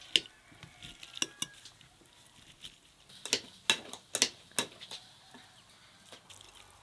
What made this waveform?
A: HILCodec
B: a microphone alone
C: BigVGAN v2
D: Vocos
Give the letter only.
B